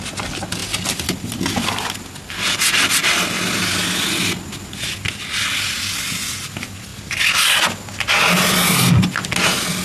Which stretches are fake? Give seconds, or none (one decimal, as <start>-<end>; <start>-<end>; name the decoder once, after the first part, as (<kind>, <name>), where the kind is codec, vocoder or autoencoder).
0.6-2.2 (vocoder, BigVGAN v2)